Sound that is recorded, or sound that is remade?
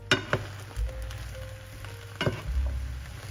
recorded